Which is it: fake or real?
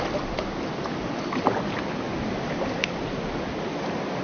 real